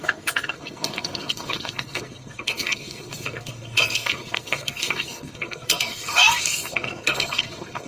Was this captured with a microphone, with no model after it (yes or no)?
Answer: no